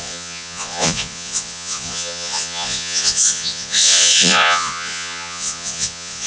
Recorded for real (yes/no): no